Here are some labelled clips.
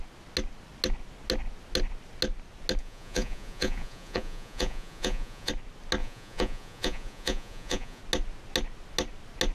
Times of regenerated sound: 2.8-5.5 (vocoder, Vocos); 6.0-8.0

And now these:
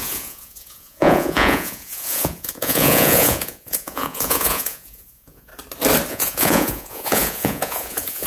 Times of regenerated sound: 0.0-5.5 (vocoder, Vocos); 6.1-8.3

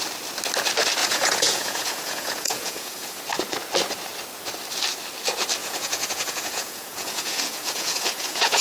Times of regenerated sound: 1.0-3.2 (vocoder, Vocos); 5.6-8.6

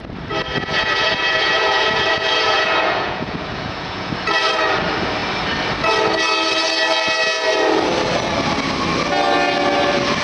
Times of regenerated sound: 0.5-4.1 (vocoder, Vocos)

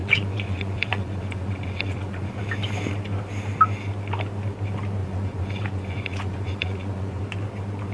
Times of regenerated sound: 0.0-2.4 (vocoder, Vocos); 5.0-7.2

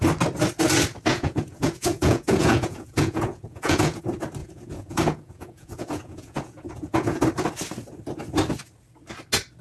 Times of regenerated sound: 1.1-4.0 (vocoder, Vocos); 4.4-7.2

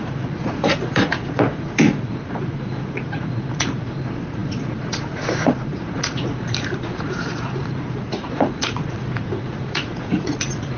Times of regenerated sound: 0.0-10.8 (vocoder, Vocos)

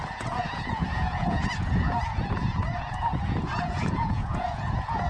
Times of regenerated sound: 0.0-5.1 (vocoder, Vocos)